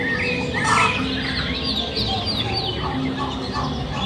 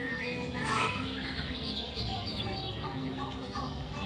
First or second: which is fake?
second